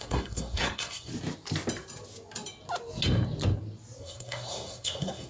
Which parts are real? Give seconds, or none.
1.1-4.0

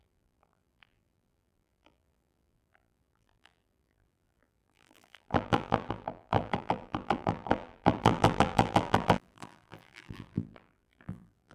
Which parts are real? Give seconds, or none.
none

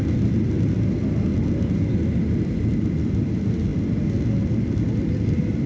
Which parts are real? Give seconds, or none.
0.0-5.7

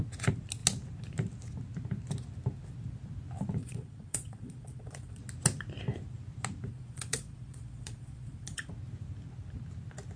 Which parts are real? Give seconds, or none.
0.0-3.6; 5.2-6.7; 8.7-10.2